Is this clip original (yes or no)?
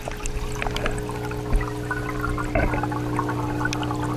yes